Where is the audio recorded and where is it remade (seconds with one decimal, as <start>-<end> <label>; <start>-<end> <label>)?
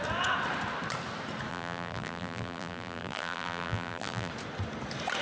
0.0-1.5 recorded; 1.5-4.3 remade; 4.3-5.2 recorded